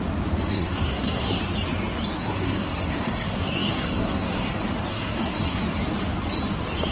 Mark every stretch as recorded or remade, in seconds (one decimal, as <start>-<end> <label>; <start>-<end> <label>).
0.0-0.5 recorded; 0.5-1.4 remade; 1.4-2.2 recorded; 2.2-4.5 remade; 4.5-4.9 recorded; 4.9-5.6 remade; 5.6-6.9 recorded